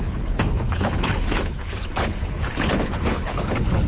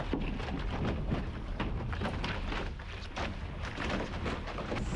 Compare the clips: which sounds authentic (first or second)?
second